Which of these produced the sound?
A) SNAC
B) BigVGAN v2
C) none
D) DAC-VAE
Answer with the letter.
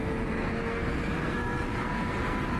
A